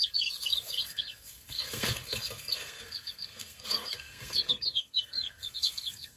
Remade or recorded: remade